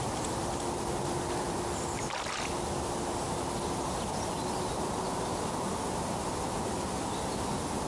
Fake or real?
real